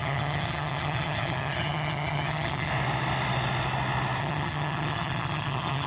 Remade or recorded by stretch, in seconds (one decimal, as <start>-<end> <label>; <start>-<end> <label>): 0.0-2.7 remade; 2.7-4.2 recorded; 4.2-5.9 remade